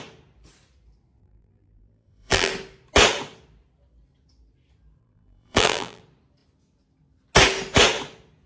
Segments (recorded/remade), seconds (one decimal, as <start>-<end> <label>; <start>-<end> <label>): 0.0-1.2 recorded; 1.2-2.5 remade; 2.5-5.0 recorded; 5.0-6.0 remade; 6.0-8.5 recorded